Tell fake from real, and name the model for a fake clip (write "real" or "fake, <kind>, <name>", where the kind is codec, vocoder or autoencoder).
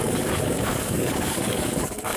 fake, codec, DAC